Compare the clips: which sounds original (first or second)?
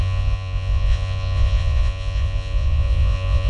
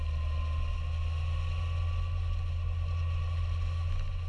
second